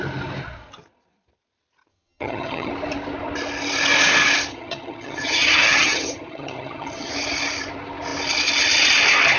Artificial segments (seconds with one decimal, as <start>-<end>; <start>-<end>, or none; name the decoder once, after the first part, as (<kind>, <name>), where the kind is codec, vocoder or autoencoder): 1.9-2.7 (vocoder, HiFi-GAN); 4.5-7.1